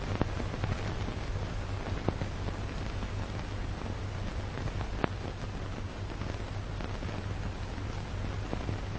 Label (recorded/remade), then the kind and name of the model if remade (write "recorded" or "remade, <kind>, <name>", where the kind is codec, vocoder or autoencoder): recorded